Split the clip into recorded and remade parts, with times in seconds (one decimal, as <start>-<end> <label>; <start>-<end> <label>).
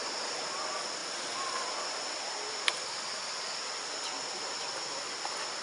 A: 0.0-5.6 recorded